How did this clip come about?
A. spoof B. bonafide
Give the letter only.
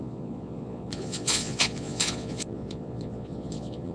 A